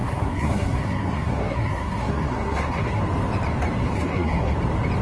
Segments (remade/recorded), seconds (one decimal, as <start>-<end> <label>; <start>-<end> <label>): 0.0-3.0 remade; 3.0-3.8 recorded; 3.8-4.5 remade; 4.5-5.0 recorded